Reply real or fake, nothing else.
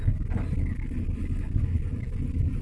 real